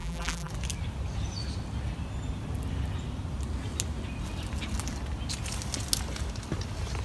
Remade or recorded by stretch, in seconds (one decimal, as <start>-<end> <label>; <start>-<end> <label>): 0.0-0.5 remade; 0.5-7.0 recorded